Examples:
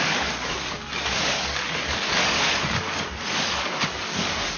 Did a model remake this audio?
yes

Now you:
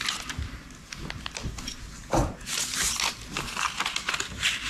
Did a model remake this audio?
no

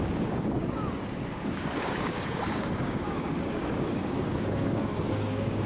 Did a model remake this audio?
yes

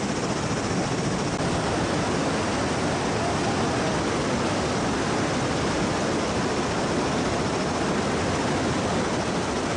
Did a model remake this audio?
no